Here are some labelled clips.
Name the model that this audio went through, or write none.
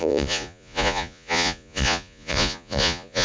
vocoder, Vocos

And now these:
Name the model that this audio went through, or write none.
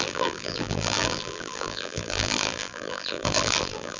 vocoder, BigVGAN v2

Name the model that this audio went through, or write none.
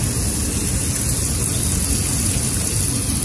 none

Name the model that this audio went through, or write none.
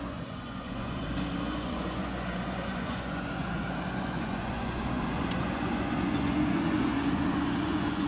vocoder, Vocos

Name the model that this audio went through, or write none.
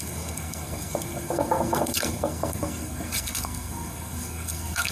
codec, SNAC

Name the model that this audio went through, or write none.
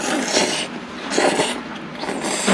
none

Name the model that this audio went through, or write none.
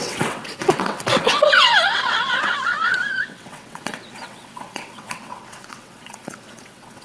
vocoder, WaveNeXt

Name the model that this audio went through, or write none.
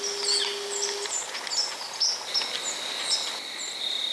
none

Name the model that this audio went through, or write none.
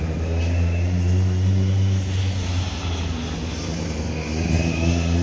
none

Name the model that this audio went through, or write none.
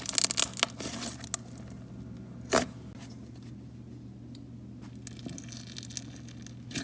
none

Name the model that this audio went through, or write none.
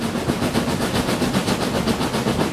none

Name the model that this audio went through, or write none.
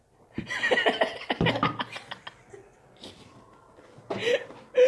none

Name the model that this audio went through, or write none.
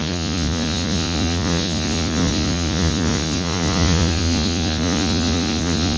vocoder, Vocos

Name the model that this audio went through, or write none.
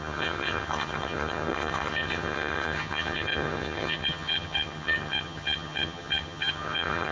vocoder, HiFi-GAN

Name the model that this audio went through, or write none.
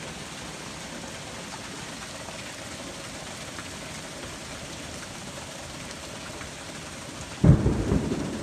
none